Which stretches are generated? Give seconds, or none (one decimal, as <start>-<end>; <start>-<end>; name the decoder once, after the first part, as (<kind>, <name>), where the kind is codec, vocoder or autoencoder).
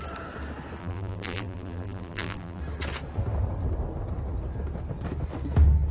0.8-2.6 (vocoder, BigVGAN v2)